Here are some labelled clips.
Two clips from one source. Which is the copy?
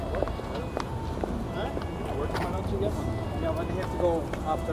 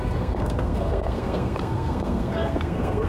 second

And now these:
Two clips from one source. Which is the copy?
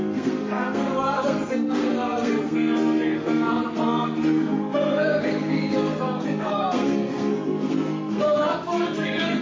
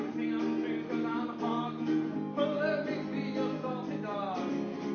first